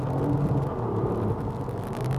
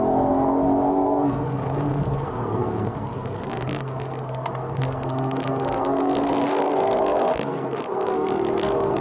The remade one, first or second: second